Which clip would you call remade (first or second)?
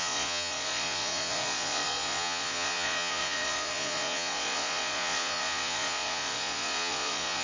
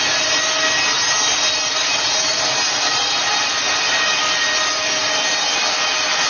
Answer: first